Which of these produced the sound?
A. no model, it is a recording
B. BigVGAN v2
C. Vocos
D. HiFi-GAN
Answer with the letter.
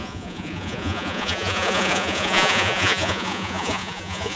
C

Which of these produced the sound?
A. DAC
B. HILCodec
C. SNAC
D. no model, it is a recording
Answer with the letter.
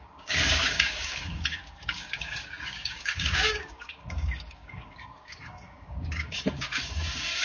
A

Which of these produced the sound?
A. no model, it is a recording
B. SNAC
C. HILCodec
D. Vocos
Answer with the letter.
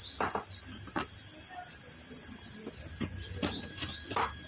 A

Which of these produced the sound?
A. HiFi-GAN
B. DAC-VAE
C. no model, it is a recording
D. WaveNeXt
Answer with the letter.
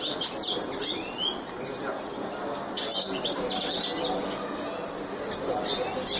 C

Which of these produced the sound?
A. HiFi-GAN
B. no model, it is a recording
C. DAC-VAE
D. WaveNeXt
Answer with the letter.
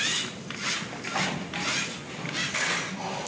B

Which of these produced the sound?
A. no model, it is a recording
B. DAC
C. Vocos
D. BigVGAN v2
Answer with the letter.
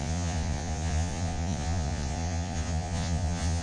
C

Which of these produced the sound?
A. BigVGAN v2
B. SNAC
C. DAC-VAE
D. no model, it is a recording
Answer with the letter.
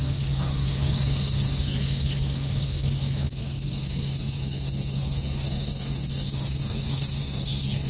B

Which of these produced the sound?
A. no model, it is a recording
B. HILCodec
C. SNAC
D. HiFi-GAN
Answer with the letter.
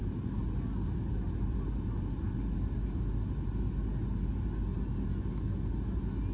A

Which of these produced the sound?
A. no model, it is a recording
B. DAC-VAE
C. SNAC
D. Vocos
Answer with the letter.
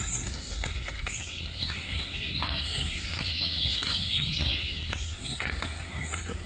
C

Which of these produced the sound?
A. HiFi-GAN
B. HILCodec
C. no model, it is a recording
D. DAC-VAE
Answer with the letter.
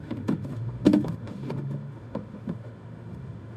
D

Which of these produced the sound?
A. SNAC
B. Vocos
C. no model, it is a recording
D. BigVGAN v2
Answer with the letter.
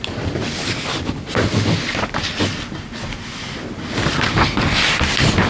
C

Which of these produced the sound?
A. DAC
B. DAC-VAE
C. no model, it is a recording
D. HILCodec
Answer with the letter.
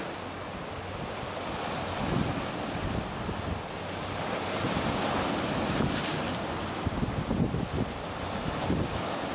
C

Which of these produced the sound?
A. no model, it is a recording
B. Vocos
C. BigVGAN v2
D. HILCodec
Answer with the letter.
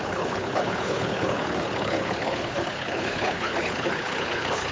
D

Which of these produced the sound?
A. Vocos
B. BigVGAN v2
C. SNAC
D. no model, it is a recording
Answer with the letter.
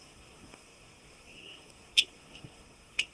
C